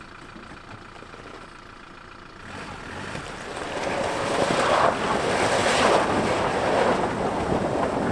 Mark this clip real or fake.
real